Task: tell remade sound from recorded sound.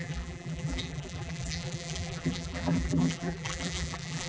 remade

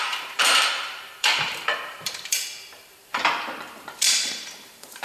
remade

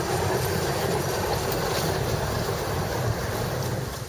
recorded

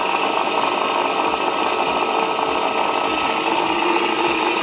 recorded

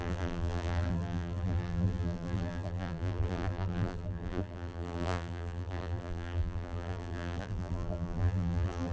remade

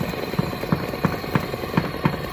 remade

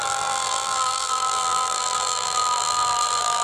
remade